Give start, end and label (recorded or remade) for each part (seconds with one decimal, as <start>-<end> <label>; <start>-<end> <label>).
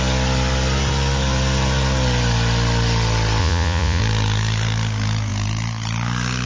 0.0-3.4 recorded; 3.4-4.0 remade; 4.0-6.5 recorded